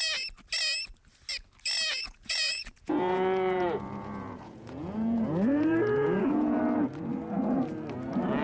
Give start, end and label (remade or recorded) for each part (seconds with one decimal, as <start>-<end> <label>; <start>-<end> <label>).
0.0-1.9 recorded; 1.9-6.6 remade; 6.6-8.4 recorded